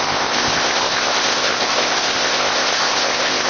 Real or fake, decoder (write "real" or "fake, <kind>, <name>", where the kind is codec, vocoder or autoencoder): fake, codec, ZipCodec